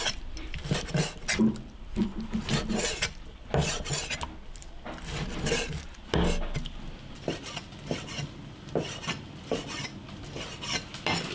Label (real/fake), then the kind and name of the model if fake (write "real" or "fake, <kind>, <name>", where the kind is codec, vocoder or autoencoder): real